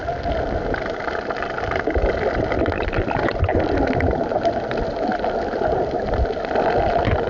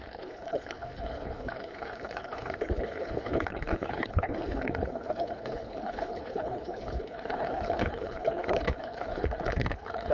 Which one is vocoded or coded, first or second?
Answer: second